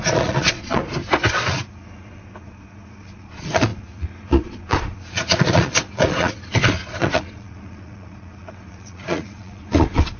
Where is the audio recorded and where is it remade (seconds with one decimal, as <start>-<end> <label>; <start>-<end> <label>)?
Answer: 0.0-0.8 remade; 0.8-1.3 recorded; 1.3-10.2 remade